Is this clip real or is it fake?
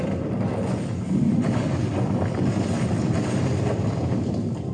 real